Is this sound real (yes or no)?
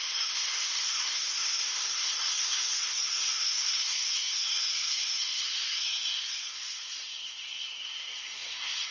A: no